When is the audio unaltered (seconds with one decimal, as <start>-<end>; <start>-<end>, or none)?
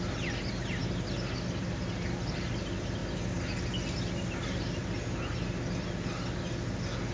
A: 0.0-7.1